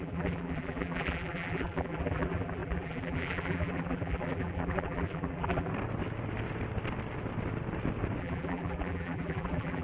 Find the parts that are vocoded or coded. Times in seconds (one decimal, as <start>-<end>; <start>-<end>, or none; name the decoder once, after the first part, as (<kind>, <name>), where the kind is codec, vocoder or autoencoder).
0.0-5.7 (vocoder, BigVGAN v2); 8.2-9.8